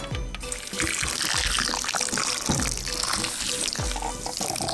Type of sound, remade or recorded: recorded